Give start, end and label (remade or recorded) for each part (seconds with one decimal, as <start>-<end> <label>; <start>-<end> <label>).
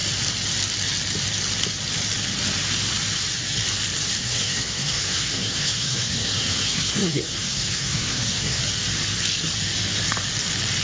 0.0-4.2 recorded; 4.2-8.6 remade; 8.6-10.8 recorded